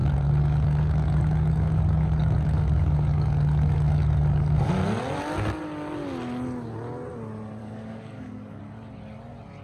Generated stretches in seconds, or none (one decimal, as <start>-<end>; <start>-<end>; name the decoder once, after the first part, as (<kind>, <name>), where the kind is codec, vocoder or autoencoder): 0.0-4.7 (codec, DAC); 7.6-8.6